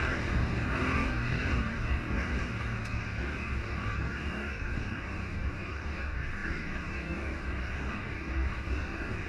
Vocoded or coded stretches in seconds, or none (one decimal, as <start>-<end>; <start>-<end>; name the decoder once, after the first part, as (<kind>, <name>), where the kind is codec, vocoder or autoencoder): 0.0-9.3 (codec, DAC)

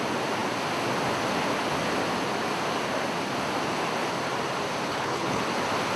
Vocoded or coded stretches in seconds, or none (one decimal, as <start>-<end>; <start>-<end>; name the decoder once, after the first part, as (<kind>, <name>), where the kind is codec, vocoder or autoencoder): 4.9-5.4 (codec, HILCodec)

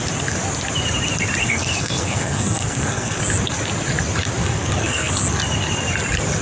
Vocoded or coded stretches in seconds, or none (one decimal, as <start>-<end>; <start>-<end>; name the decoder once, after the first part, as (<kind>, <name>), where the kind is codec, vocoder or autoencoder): 1.4-3.2 (codec, SNAC); 4.4-5.1

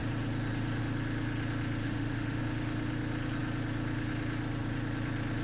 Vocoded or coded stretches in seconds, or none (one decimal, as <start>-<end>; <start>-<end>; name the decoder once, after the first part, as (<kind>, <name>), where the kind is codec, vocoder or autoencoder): 1.8-2.4 (autoencoder, DAC-VAE)

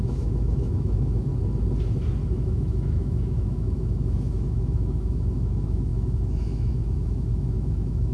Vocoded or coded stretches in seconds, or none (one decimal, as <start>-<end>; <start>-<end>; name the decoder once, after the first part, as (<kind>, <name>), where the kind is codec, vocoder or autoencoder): 0.0-1.3 (autoencoder, DAC-VAE); 2.3-8.1

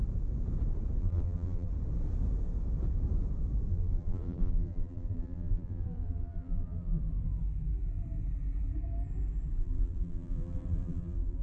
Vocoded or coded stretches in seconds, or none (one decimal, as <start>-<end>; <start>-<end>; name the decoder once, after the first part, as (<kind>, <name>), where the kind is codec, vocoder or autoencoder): 1.0-1.7 (vocoder, BigVGAN v2); 3.7-7.0; 9.6-11.4

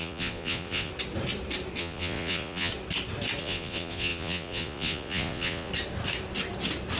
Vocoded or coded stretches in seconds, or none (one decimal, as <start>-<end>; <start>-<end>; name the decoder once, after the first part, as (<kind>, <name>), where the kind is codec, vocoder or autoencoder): 0.0-0.9 (vocoder, Vocos); 1.8-2.7; 3.4-5.7

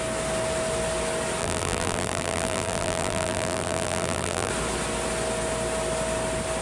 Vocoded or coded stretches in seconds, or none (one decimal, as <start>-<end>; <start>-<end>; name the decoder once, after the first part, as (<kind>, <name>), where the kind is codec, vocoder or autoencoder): 1.4-4.5 (vocoder, BigVGAN v2)